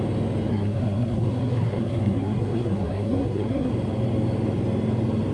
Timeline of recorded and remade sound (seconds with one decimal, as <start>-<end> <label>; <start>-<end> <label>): 0.0-0.5 recorded; 0.5-3.7 remade; 3.7-5.3 recorded